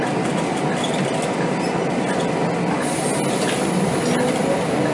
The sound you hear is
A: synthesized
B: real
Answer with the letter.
B